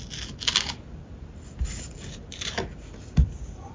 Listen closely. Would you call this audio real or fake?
real